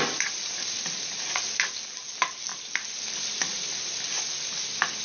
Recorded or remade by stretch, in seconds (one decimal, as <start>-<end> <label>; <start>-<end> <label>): 0.0-5.0 recorded